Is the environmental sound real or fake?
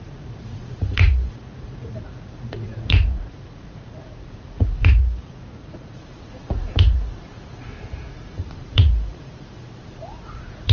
fake